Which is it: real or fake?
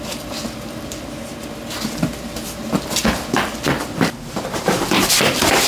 real